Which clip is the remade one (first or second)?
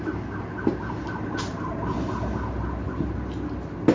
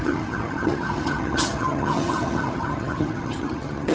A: second